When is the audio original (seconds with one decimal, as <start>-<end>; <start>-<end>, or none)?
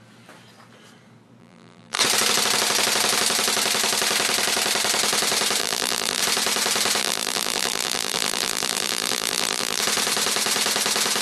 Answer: 0.0-1.4; 2.0-5.6; 6.2-7.0; 9.8-11.2